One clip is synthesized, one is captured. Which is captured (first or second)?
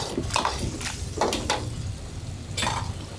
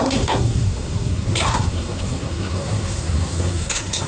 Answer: first